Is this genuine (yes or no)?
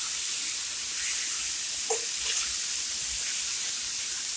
yes